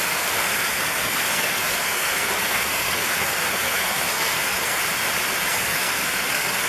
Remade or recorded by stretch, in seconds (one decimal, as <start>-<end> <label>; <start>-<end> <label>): 0.0-4.8 remade; 4.8-5.5 recorded; 5.5-6.7 remade